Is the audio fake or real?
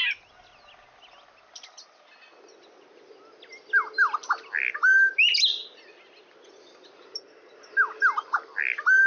real